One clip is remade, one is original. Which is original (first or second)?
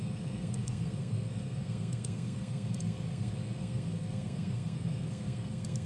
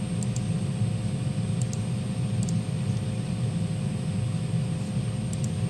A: second